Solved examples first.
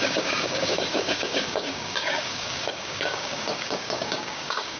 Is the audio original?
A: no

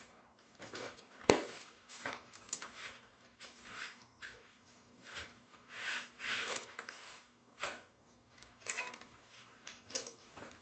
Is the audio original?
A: no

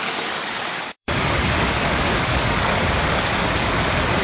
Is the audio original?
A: no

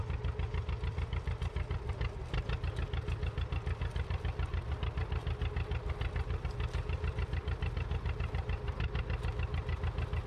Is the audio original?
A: yes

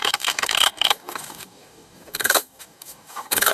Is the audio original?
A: no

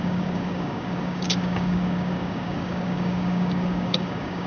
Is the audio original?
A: no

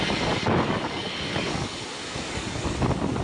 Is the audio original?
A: no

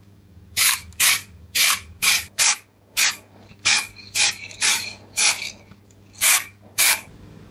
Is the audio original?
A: no